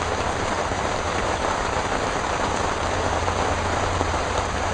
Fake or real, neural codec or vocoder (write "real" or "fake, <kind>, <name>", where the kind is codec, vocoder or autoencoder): fake, vocoder, BigVGAN v2